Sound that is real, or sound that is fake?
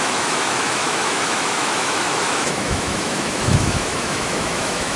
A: fake